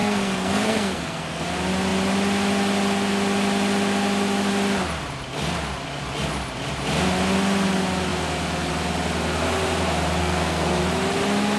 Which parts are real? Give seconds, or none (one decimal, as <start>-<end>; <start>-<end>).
1.4-10.2; 10.8-11.6